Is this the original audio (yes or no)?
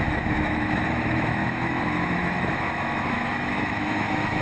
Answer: no